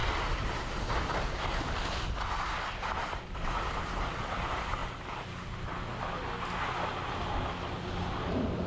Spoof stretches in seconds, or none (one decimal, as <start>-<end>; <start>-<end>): none